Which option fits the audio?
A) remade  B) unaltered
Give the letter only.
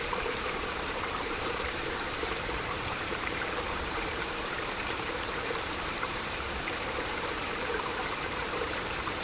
A